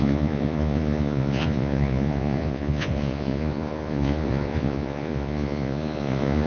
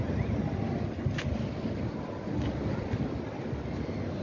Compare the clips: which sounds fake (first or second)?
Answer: first